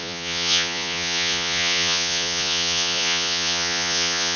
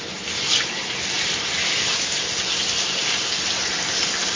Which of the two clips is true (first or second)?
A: second